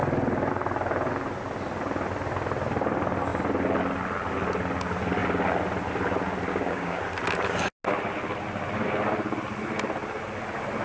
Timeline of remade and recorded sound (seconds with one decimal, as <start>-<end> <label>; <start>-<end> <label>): 0.0-6.5 recorded; 6.5-7.0 remade; 7.0-10.8 recorded

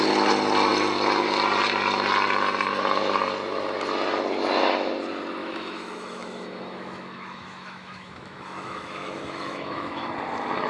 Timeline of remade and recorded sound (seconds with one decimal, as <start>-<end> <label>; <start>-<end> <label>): 0.0-5.4 recorded; 5.4-10.1 remade; 10.1-10.7 recorded

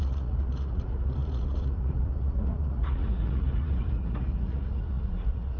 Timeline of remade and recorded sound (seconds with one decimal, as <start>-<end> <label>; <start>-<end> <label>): 0.0-5.6 remade

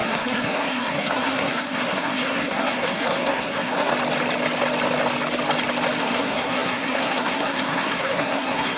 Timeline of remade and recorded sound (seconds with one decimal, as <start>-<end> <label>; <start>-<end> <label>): 0.0-3.9 remade; 3.9-6.0 recorded; 6.0-8.8 remade